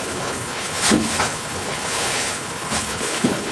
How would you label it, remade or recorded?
remade